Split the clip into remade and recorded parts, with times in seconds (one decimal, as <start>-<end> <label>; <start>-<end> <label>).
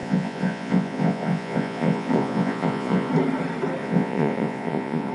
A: 0.0-3.1 remade; 3.1-3.8 recorded; 3.8-5.1 remade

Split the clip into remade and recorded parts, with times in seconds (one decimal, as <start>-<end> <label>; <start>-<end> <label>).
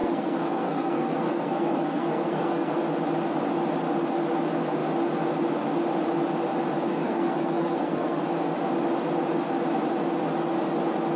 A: 0.0-2.8 remade; 2.8-6.9 recorded; 6.9-8.2 remade; 8.2-11.2 recorded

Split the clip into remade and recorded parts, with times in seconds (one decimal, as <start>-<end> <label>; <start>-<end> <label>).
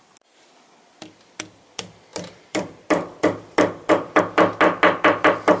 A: 0.0-2.1 recorded; 2.1-4.2 remade; 4.2-5.6 recorded